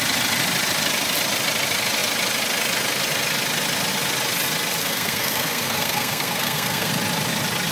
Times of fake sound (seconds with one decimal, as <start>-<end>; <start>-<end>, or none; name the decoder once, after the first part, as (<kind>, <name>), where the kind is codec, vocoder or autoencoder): 4.8-6.9 (codec, SNAC)